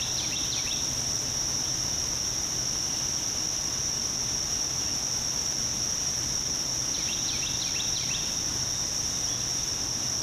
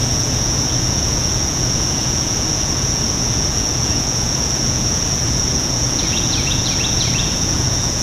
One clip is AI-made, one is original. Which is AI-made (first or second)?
second